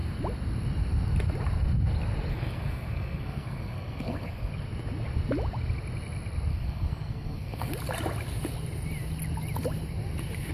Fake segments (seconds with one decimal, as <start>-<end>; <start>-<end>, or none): 2.3-4.5; 6.5-7.7